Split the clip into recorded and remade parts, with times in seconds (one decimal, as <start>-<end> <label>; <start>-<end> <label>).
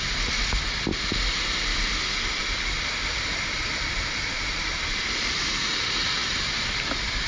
0.0-7.3 recorded